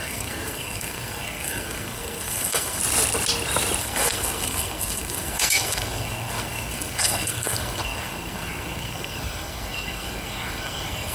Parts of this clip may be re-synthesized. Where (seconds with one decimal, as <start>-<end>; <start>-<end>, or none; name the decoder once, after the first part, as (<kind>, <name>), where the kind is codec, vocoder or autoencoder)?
0.0-2.8 (codec, SNAC); 3.8-11.1